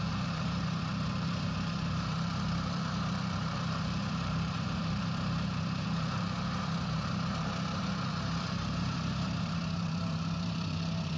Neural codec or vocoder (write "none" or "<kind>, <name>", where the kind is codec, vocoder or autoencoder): vocoder, BigVGAN v2